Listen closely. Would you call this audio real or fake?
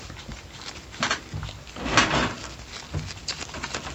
real